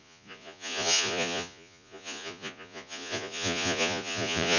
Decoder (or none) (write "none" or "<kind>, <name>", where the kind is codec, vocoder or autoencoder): vocoder, Vocos